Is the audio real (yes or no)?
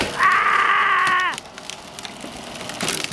yes